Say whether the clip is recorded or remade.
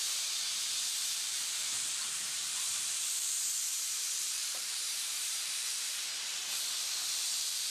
remade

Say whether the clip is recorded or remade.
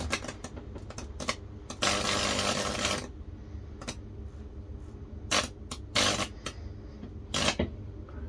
recorded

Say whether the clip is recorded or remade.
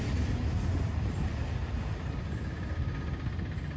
recorded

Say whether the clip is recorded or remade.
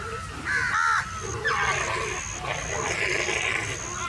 recorded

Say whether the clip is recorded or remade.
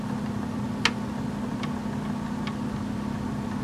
recorded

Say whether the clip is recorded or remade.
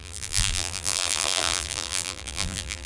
remade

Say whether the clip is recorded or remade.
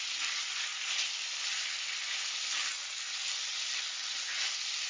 recorded